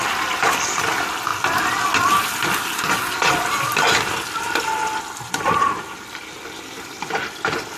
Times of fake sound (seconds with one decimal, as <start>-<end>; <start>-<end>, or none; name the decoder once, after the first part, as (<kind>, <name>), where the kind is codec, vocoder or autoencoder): none